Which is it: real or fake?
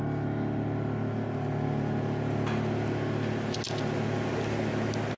real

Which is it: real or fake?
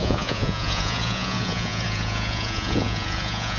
fake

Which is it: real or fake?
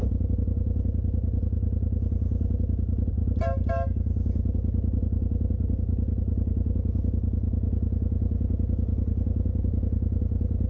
real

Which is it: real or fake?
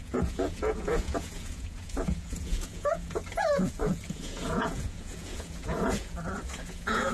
fake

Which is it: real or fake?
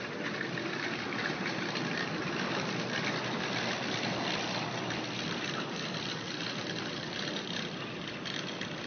real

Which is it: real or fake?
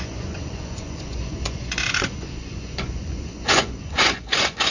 fake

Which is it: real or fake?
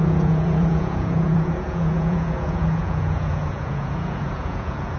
fake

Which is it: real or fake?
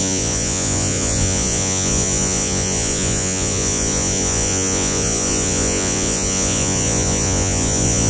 fake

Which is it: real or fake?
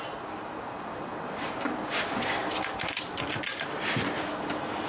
real